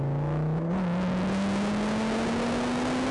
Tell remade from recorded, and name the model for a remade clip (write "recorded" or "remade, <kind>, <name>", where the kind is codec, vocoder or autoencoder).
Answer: recorded